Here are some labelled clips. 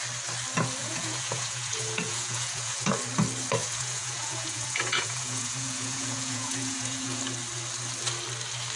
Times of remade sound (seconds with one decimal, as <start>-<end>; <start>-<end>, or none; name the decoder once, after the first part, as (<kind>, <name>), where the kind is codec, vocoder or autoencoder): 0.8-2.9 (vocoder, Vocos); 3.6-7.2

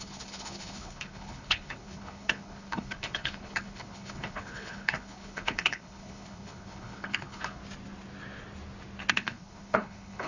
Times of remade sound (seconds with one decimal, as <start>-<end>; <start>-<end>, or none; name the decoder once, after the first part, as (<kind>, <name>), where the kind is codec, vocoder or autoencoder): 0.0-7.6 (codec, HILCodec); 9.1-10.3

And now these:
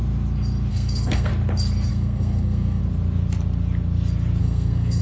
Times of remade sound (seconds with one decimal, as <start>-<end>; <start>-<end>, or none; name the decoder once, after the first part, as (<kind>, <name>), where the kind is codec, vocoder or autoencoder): 0.7-1.3 (codec, SNAC); 1.9-2.8; 4.4-5.0